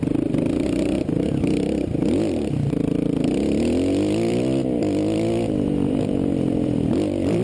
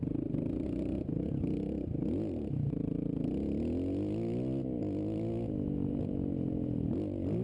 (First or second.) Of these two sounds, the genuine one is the second